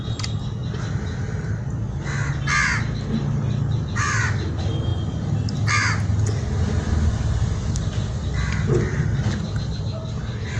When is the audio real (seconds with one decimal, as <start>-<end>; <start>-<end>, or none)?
0.0-10.6